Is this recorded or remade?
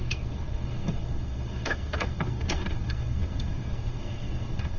remade